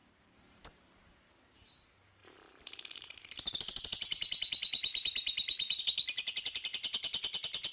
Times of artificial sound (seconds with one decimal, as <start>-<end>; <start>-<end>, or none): 0.0-1.4; 2.2-5.8

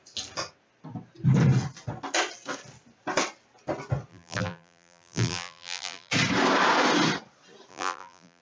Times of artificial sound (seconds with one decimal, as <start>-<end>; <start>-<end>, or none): 4.1-6.1; 7.7-8.4

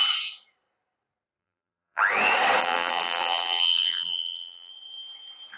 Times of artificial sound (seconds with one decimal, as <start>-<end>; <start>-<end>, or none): 1.4-2.0; 2.6-4.7

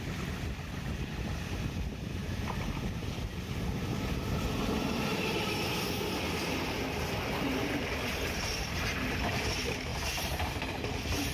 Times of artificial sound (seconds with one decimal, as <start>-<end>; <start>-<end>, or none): 0.0-9.9; 10.9-11.3

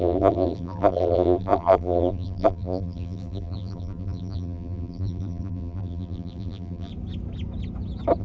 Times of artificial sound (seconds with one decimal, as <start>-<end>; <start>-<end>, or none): 0.0-6.9

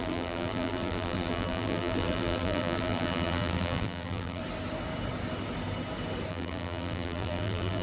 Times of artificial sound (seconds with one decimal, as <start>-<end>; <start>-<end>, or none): 0.0-4.4; 6.3-7.8

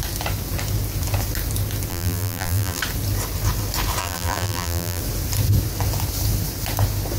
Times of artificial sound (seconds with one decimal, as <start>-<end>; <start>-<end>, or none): 1.9-2.8; 4.0-5.0